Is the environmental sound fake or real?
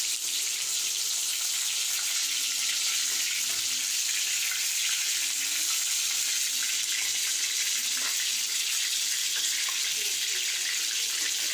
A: real